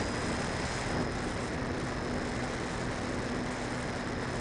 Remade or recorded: recorded